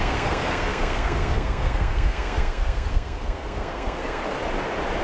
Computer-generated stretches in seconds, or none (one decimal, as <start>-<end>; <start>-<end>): 0.0-4.2